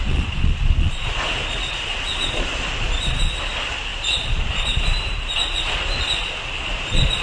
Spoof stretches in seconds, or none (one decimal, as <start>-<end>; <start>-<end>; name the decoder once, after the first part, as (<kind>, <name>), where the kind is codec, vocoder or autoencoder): 0.0-7.2 (vocoder, Vocos)